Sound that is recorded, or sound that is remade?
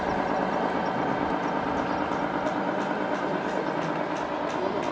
recorded